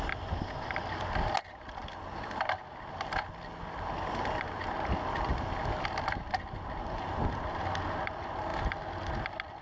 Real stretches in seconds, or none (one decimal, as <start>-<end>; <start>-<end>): 0.0-9.6